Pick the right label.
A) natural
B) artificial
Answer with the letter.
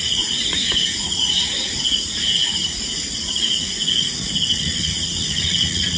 B